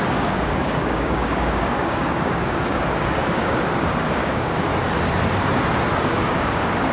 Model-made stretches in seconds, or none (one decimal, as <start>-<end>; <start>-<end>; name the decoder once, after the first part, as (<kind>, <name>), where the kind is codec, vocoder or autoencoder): 0.0-4.7 (codec, DAC); 6.0-6.9